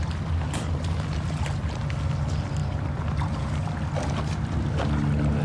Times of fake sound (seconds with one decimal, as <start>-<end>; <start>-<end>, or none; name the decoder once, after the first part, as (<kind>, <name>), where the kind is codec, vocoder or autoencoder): 2.6-3.6 (vocoder, BigVGAN v2)